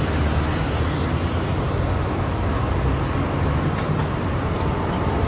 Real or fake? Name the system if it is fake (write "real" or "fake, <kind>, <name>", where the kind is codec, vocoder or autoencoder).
real